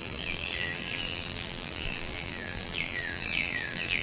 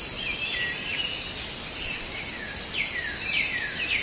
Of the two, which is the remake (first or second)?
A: first